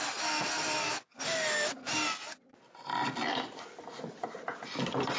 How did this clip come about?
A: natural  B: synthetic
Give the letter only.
A